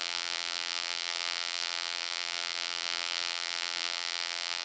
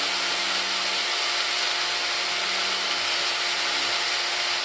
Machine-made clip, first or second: first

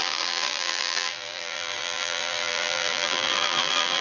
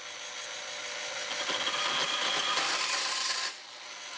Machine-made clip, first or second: first